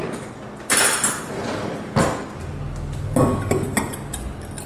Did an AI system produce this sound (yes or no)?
no